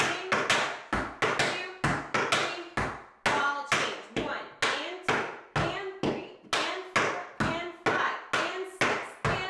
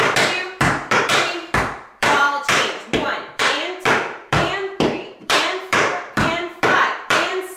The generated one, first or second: second